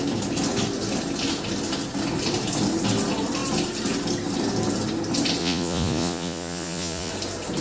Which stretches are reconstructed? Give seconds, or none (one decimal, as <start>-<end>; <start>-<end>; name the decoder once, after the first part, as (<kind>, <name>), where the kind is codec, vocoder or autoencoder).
5.4-7.1 (vocoder, Vocos)

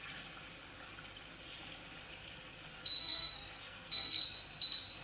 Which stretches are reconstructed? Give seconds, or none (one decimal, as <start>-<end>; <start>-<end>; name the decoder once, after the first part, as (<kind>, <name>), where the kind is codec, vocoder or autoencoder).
3.0-4.2 (codec, SNAC)

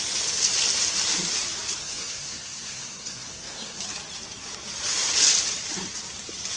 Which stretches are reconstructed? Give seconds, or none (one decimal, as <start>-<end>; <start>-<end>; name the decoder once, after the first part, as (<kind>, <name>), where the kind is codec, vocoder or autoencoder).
1.8-3.8 (codec, SNAC)

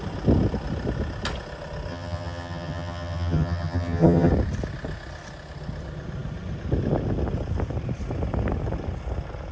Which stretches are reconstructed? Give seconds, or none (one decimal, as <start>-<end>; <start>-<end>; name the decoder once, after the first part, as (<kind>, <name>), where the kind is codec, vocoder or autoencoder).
1.9-4.3 (vocoder, HiFi-GAN)

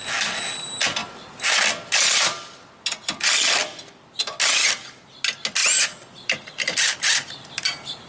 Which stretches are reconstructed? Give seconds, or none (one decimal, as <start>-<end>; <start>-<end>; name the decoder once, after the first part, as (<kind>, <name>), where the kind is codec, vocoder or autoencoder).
1.0-1.6 (vocoder, BigVGAN v2); 5.6-8.1